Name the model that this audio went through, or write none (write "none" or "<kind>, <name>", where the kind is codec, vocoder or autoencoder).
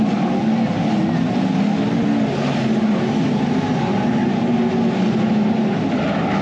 none